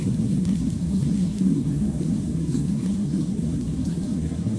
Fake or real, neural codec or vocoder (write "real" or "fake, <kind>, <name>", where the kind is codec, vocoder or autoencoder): fake, codec, SNAC